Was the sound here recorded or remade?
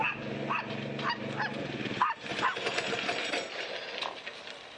recorded